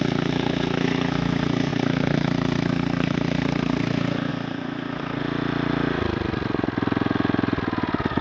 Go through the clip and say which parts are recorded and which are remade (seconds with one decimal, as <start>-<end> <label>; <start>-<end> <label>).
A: 0.0-5.2 remade; 5.2-8.2 recorded